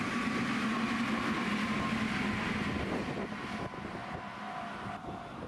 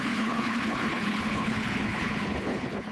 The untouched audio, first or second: first